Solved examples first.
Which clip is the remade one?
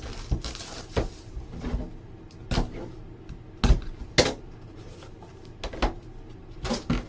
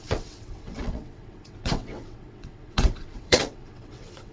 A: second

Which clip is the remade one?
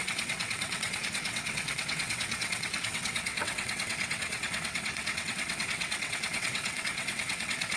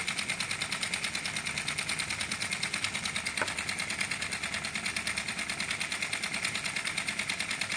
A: first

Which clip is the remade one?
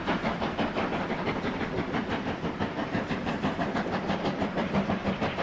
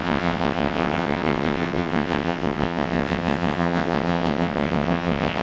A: second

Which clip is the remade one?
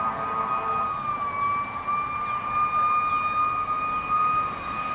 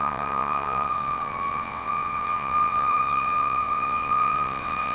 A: second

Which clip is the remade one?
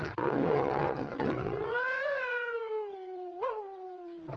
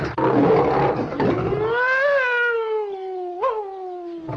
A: first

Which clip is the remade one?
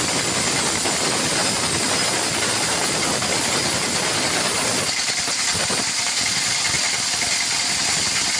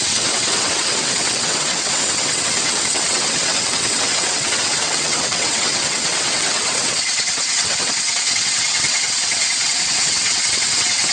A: second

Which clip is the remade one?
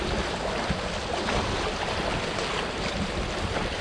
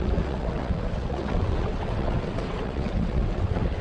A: second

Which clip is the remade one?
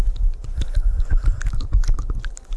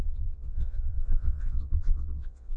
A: second